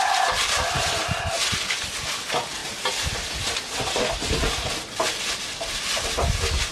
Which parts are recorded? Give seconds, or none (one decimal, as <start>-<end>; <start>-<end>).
0.0-6.7